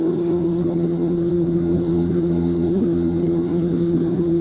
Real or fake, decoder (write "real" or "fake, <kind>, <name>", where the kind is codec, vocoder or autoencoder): fake, codec, SNAC